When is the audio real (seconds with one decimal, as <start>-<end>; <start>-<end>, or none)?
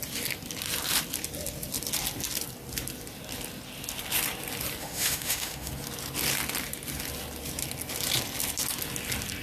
0.0-4.8; 5.7-9.4